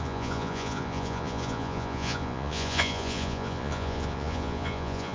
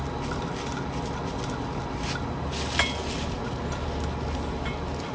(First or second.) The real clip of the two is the second